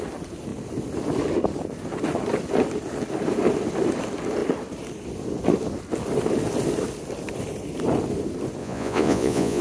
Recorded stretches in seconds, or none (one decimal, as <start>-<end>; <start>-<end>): 0.0-8.6

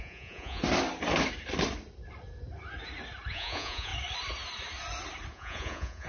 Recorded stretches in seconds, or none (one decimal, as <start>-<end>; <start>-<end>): 0.6-3.3; 3.9-5.3

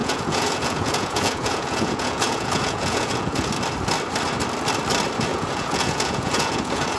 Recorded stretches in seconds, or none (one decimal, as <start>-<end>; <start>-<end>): 3.5-5.3

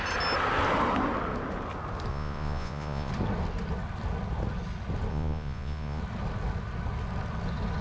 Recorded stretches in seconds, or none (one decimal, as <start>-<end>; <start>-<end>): 0.0-2.1; 3.1-5.1; 6.0-7.8